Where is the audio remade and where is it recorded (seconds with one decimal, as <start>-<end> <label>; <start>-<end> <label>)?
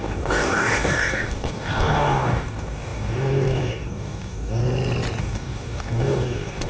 0.0-4.6 remade; 4.6-5.2 recorded; 5.2-6.7 remade